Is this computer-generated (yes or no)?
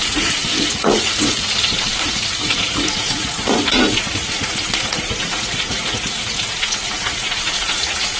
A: yes